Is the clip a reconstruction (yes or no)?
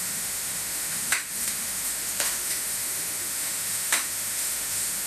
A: yes